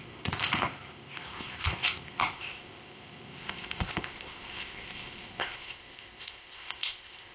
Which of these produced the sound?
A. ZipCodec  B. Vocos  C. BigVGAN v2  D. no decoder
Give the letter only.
A